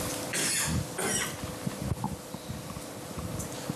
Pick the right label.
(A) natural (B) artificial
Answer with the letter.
A